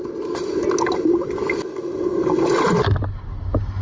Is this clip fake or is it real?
real